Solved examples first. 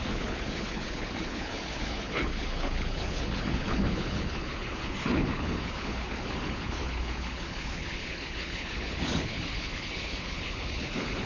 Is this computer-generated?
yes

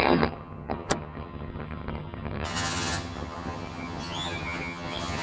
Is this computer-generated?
yes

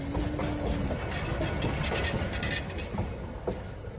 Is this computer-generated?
no